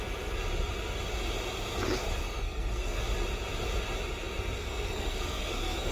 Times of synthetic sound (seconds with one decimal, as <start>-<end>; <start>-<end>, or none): 2.2-3.0; 4.6-5.9